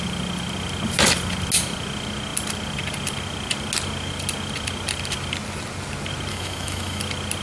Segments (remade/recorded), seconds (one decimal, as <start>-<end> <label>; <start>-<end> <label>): 0.0-6.3 recorded; 6.3-7.0 remade; 7.0-7.4 recorded